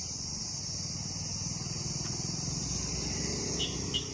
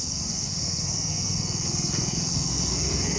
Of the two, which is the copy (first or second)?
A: second